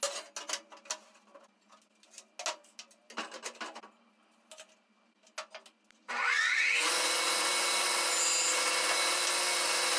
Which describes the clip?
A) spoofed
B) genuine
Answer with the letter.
B